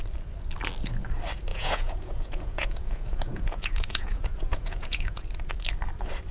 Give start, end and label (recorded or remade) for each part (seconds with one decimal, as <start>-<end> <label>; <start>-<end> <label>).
0.0-1.5 recorded; 1.5-5.3 remade; 5.3-6.3 recorded